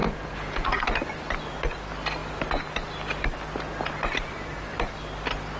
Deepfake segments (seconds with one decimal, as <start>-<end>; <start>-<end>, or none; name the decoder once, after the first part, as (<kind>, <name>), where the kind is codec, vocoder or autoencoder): 0.0-0.8 (vocoder, Vocos)